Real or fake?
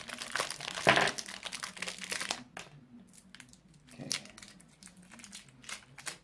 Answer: real